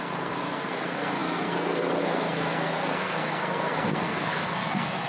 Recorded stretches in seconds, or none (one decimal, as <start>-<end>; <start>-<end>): none